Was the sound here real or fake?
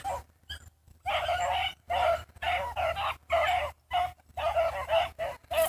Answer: real